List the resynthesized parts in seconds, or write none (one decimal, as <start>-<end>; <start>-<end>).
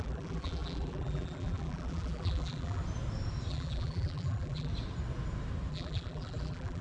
0.0-2.8; 3.5-4.7; 5.7-6.8